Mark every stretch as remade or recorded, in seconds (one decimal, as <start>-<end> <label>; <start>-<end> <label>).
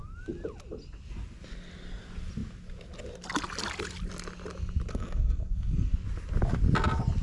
0.0-4.9 recorded; 4.9-5.9 remade; 5.9-7.2 recorded